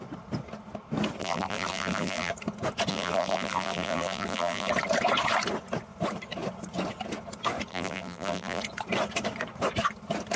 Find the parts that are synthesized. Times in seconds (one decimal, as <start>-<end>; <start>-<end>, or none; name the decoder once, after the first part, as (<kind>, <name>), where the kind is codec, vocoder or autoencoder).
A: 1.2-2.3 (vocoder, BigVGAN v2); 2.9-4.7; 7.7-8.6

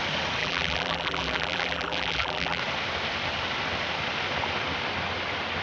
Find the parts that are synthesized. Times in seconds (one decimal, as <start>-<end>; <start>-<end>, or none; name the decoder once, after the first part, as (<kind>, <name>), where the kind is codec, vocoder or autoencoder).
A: 0.4-2.6 (vocoder, BigVGAN v2)

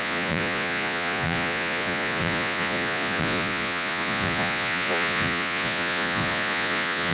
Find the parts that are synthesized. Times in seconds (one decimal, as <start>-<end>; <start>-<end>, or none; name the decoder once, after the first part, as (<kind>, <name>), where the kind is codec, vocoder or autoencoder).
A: 0.0-7.1 (vocoder, Vocos)